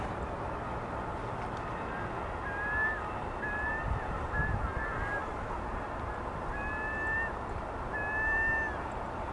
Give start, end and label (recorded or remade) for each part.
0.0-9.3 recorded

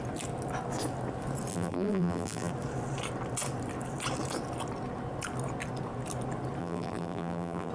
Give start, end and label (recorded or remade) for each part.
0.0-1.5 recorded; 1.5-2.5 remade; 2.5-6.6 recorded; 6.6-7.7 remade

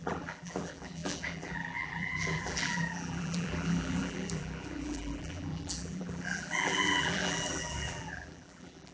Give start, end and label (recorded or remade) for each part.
0.0-8.9 remade

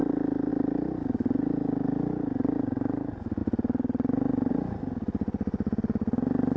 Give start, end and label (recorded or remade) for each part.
0.0-3.4 recorded; 3.4-4.5 remade; 4.5-6.6 recorded

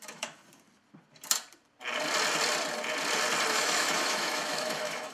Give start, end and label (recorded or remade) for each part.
0.0-0.4 remade; 0.4-3.5 recorded; 3.5-5.1 remade

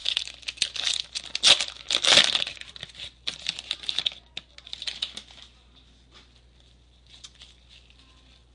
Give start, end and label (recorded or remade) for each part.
0.0-8.5 recorded